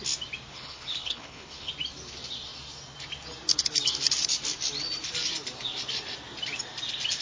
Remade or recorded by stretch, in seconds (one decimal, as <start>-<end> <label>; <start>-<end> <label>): 0.0-0.5 recorded; 0.5-1.7 remade; 1.7-7.2 recorded